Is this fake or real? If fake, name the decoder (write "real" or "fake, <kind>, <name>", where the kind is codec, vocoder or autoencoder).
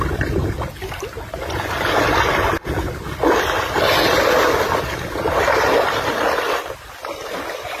real